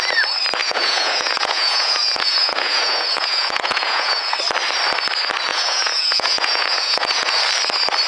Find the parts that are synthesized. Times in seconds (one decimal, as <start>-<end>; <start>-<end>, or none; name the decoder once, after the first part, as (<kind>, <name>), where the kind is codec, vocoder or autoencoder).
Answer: 0.6-4.3 (vocoder, Vocos); 5.5-7.4